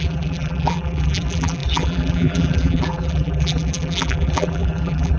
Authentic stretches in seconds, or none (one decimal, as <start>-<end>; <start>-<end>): none